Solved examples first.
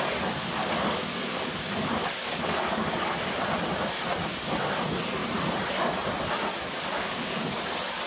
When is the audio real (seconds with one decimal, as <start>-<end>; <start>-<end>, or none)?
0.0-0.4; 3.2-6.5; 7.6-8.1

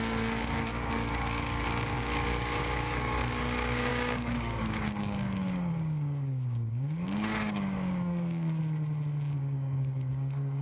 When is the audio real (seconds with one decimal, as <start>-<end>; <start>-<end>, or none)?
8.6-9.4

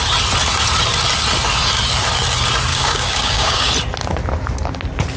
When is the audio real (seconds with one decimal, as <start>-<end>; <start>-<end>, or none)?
0.0-2.7; 3.7-5.2

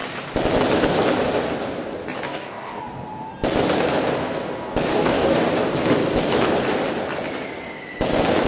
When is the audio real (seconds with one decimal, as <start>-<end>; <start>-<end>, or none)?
0.0-2.3; 2.8-4.9; 5.5-8.5